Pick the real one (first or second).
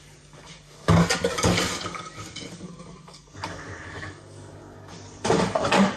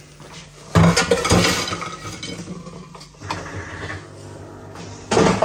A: second